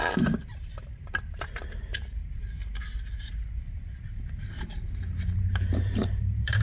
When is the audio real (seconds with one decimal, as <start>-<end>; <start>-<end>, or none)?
2.6-3.3